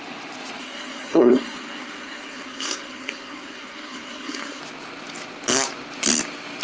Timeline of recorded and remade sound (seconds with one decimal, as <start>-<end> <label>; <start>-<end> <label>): 0.0-0.6 recorded; 0.6-4.6 remade; 4.6-6.6 recorded